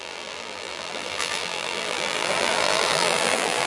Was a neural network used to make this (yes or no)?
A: yes